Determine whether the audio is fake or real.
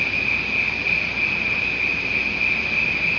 real